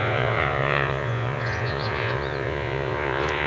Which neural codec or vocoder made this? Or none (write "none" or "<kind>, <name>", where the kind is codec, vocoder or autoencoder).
vocoder, Vocos